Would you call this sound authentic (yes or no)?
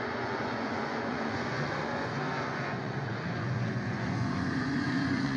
no